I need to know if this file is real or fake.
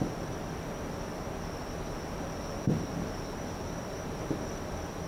real